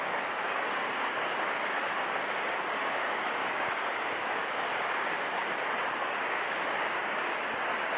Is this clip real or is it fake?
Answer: fake